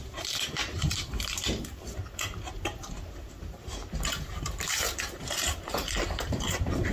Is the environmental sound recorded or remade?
remade